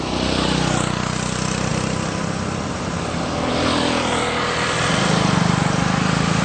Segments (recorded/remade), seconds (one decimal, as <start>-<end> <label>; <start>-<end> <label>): 0.0-6.4 recorded